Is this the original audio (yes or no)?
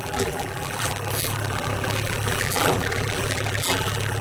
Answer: no